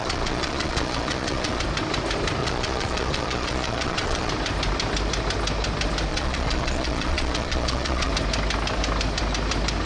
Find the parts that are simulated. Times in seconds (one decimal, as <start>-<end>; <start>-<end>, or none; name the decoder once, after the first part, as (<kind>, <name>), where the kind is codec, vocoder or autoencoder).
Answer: 0.0-1.6 (vocoder, Vocos); 2.4-4.3; 6.1-8.1